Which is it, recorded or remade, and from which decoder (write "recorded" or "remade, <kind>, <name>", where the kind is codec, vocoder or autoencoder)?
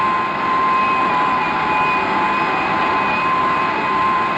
recorded